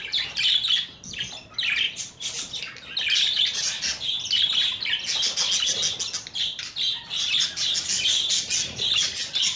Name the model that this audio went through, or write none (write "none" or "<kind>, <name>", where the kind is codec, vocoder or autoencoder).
none